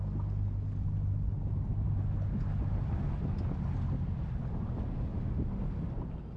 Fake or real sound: real